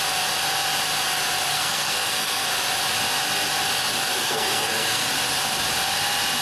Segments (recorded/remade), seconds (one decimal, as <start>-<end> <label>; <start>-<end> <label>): 0.0-1.5 recorded; 1.5-2.5 remade; 2.5-4.1 recorded; 4.1-5.1 remade; 5.1-6.4 recorded